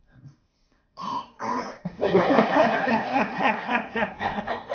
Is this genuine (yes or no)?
no